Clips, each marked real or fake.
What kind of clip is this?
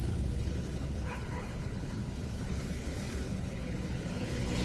fake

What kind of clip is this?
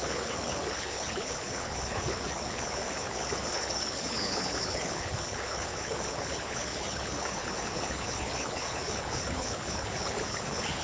fake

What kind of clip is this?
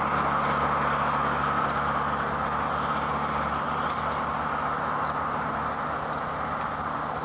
real